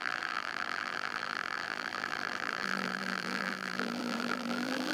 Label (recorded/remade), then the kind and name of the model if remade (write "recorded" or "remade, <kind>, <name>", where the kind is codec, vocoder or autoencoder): remade, vocoder, BigVGAN v2